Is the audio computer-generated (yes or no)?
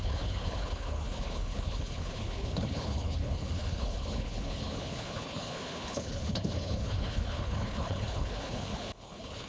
yes